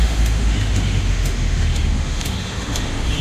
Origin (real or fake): fake